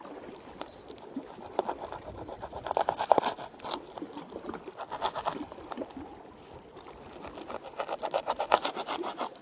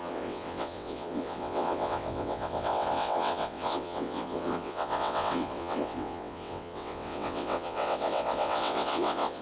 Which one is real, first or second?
first